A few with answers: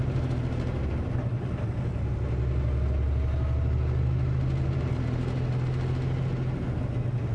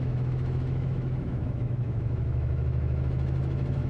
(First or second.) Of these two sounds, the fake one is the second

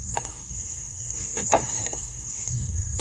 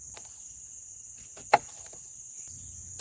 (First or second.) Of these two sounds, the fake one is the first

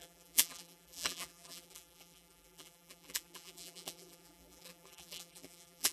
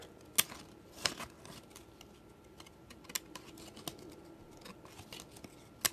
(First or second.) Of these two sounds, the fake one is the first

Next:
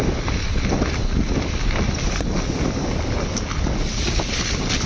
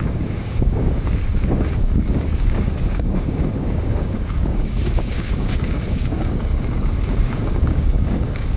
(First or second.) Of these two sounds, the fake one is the second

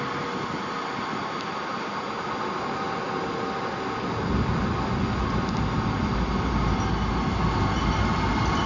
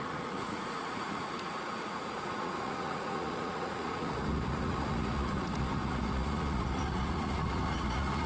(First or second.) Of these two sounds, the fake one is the second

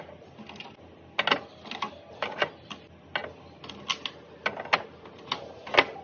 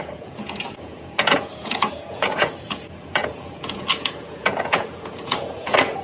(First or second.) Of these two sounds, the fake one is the second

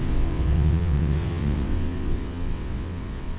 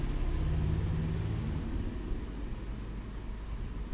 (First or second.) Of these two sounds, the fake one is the first